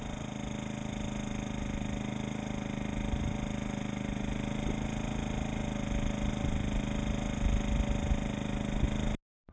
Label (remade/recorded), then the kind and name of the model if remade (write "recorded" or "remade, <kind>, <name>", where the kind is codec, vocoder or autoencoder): recorded